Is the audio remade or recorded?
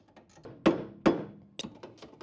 recorded